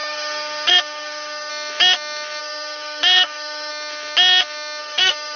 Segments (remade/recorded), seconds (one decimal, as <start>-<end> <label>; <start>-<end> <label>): 0.0-1.5 remade; 1.5-2.4 recorded; 2.4-3.7 remade; 3.7-4.8 recorded; 4.8-5.4 remade